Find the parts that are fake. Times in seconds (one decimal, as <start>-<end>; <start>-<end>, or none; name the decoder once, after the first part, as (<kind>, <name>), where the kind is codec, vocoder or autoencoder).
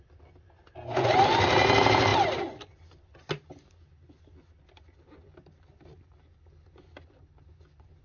none